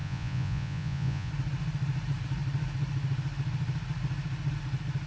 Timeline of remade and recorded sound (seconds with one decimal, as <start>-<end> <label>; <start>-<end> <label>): 0.0-1.3 remade; 1.3-5.1 recorded

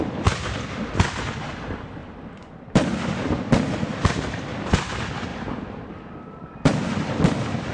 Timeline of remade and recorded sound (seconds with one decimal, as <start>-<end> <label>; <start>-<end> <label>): 0.0-5.3 recorded; 5.3-5.8 remade; 5.8-7.7 recorded